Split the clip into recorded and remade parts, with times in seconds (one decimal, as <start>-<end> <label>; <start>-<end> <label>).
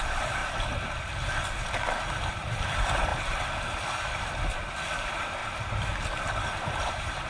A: 0.0-0.4 remade; 0.4-2.3 recorded; 2.3-3.1 remade; 3.1-4.9 recorded; 4.9-5.4 remade; 5.4-6.2 recorded; 6.2-7.3 remade